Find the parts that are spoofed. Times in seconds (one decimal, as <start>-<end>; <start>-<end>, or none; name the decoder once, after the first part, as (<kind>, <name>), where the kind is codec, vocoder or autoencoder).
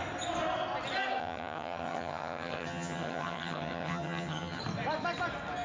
1.2-4.6 (vocoder, HiFi-GAN)